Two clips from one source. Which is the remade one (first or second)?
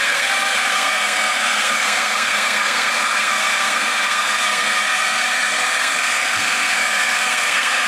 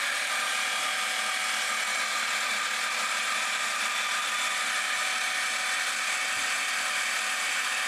first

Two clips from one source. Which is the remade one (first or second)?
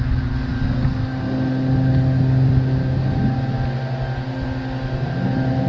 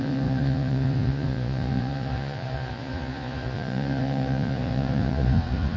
second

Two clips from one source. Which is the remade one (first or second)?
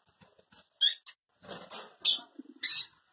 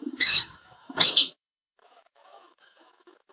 second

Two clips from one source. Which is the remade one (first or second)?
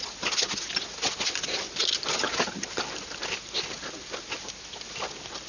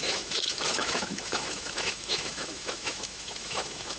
second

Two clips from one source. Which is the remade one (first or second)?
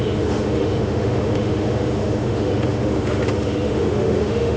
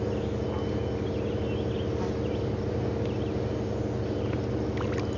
first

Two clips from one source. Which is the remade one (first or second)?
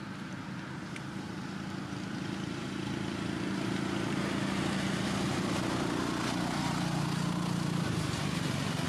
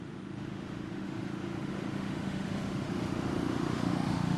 second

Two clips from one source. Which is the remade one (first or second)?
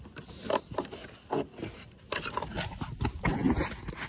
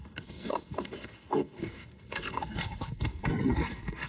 second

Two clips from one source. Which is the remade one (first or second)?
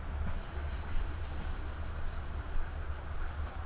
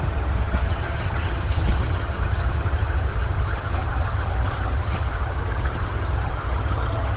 second